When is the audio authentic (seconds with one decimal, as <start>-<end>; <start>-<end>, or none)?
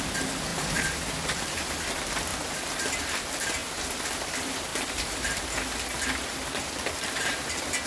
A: 0.0-0.5; 1.7-4.7; 5.4-7.9